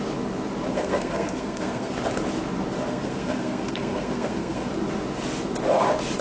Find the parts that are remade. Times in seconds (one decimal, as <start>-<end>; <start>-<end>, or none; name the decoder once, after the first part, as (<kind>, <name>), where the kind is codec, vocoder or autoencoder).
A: 0.7-1.9 (codec, SNAC); 2.9-4.7